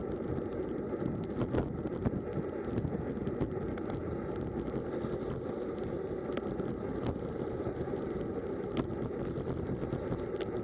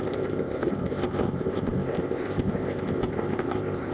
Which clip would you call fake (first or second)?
second